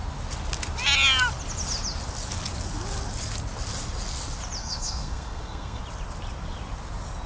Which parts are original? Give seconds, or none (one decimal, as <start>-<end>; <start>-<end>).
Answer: 0.0-4.6; 5.8-7.3